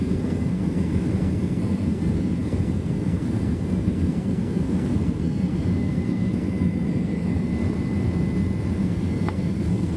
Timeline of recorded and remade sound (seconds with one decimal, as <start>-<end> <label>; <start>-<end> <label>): 0.0-7.5 remade; 7.5-8.8 recorded; 8.8-10.0 remade